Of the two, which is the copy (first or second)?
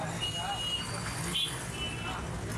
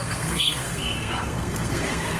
second